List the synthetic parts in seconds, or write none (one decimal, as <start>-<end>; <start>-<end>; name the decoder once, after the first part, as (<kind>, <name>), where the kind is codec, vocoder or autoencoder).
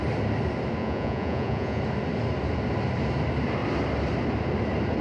0.8-1.8 (vocoder, Vocos)